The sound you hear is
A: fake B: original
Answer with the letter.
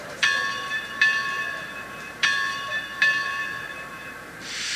A